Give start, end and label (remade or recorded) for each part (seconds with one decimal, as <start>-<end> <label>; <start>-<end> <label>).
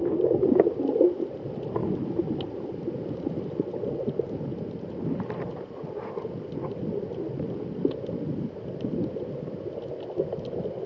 0.0-10.9 recorded